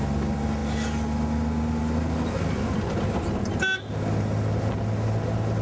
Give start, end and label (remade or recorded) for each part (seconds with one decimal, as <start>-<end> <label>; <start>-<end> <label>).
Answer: 0.0-5.6 recorded